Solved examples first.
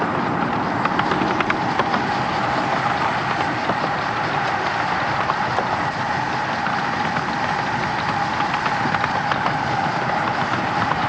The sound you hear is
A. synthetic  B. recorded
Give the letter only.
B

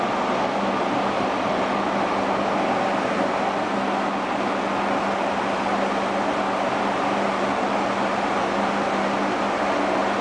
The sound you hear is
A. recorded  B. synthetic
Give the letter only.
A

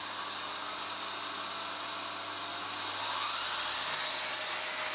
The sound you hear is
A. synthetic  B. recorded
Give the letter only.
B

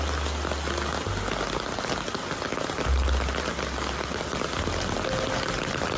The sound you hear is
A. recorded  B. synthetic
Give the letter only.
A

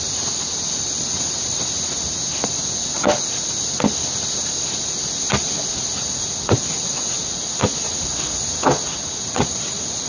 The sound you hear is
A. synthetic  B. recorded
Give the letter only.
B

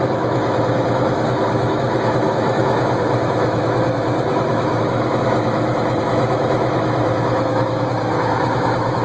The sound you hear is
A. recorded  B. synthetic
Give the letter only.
B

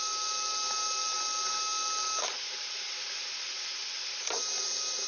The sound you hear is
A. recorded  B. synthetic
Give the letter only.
A